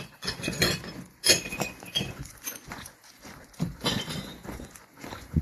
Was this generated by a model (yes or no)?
yes